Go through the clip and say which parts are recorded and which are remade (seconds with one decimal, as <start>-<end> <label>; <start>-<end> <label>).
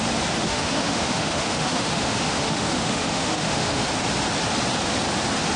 0.0-0.4 recorded; 0.4-3.8 remade; 3.8-5.6 recorded